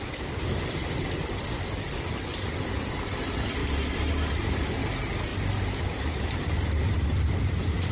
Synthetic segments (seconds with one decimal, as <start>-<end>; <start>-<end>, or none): none

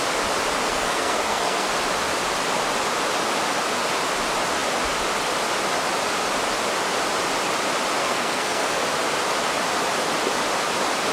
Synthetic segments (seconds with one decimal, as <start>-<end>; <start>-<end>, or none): 0.7-1.7; 8.0-8.8